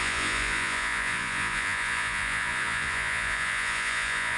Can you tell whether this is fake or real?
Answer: fake